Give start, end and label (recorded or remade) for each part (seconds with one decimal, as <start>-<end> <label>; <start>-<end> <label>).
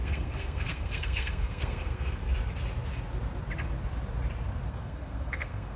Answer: 0.0-2.2 remade; 2.2-4.7 recorded; 4.7-5.8 remade